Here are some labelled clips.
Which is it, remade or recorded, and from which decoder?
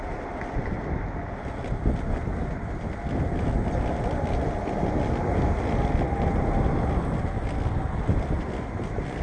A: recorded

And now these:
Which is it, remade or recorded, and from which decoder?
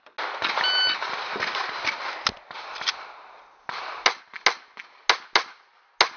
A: recorded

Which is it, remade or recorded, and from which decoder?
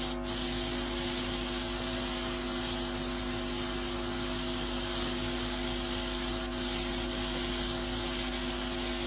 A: recorded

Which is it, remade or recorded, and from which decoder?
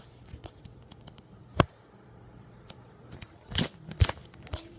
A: remade, vocoder, BigVGAN v2